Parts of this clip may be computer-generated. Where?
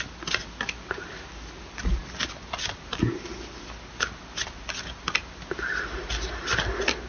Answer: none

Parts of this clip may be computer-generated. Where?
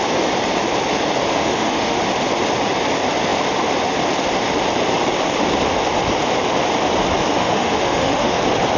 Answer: 1.2-2.0 (autoencoder, DAC-VAE); 7.3-8.4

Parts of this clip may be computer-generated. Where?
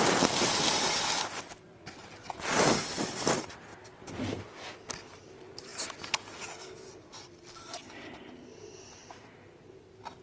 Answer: none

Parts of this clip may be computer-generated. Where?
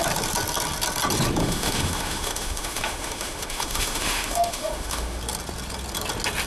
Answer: 1.4-5.2 (autoencoder, DAC-VAE)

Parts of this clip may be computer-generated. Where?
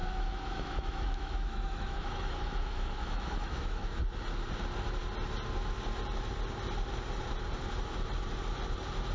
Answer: 0.0-4.0 (autoencoder, DAC-VAE)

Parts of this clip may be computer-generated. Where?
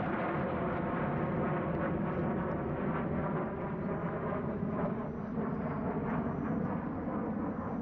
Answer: 4.0-4.9 (autoencoder, DAC-VAE)